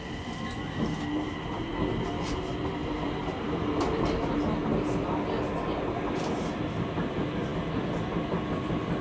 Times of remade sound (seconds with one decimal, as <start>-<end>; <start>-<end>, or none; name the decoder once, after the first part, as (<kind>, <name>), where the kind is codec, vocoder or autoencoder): 2.8-4.3 (vocoder, BigVGAN v2)